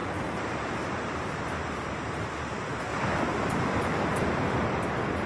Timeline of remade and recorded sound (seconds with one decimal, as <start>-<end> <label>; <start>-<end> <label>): 0.0-1.6 remade; 1.6-2.9 recorded; 2.9-4.5 remade; 4.5-5.3 recorded